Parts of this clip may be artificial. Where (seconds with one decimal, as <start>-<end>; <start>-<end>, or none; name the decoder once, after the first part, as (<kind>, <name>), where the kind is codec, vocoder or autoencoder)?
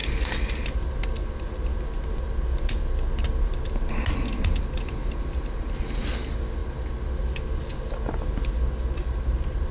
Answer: none